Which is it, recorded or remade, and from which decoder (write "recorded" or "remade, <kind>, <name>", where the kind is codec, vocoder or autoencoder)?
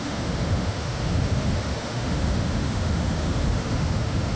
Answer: remade, autoencoder, DAC-VAE